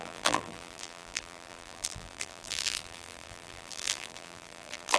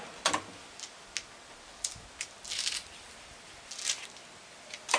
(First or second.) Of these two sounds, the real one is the second